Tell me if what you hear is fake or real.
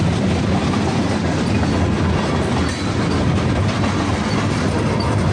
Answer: real